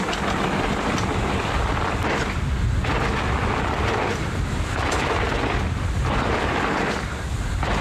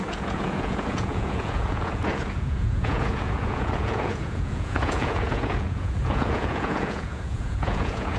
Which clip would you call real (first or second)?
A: first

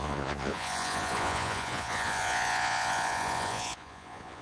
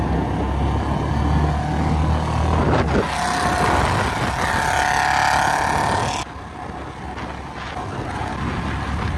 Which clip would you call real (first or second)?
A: second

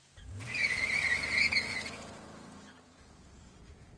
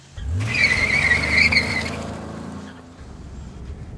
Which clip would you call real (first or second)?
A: second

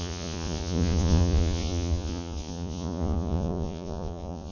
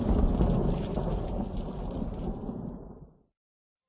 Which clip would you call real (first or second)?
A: second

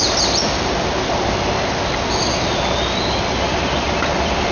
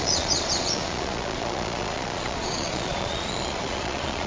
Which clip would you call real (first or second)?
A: first